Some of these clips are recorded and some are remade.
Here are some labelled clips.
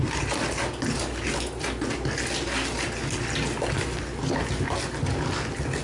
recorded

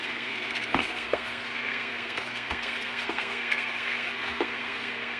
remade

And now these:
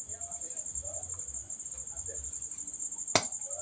recorded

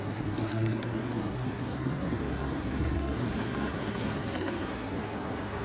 remade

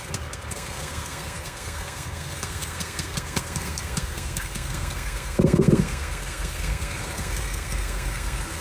remade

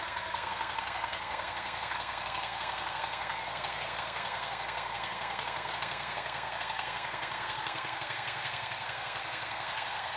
remade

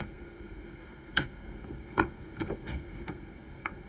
remade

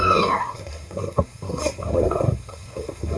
remade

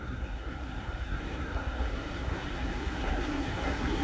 remade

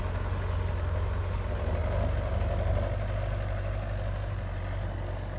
recorded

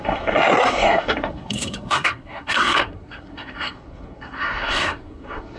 remade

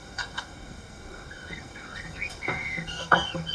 remade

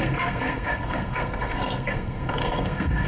remade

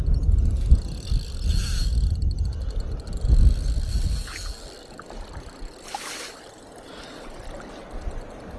recorded